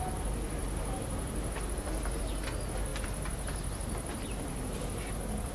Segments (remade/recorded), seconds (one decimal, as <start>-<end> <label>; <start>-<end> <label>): 0.0-5.5 recorded